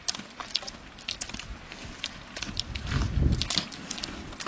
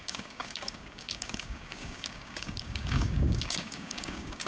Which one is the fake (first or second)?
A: second